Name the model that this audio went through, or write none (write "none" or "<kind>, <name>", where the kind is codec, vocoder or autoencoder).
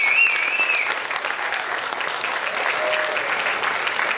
none